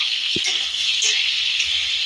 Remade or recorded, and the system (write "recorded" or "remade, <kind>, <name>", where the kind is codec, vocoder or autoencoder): remade, codec, SNAC